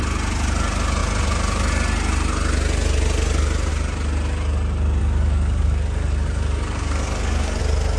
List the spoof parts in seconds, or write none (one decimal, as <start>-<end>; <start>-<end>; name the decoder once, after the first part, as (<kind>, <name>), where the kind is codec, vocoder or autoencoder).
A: 5.0-7.6 (codec, DAC)